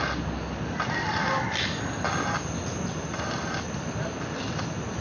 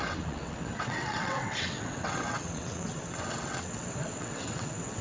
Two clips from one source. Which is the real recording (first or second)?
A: first